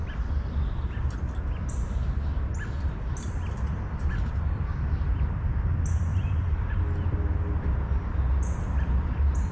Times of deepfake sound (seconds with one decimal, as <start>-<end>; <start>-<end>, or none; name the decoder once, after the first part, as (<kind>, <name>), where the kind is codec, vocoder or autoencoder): 6.1-6.7 (vocoder, BigVGAN v2)